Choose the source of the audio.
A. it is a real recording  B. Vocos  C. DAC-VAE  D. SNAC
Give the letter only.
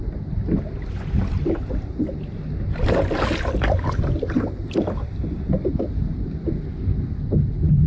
A